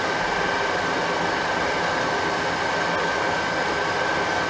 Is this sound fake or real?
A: real